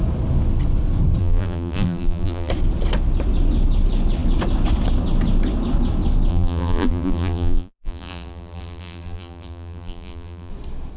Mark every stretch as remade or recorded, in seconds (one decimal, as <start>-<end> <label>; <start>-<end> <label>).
0.0-1.2 recorded; 1.2-2.5 remade; 2.5-6.3 recorded; 6.3-10.5 remade; 10.5-11.0 recorded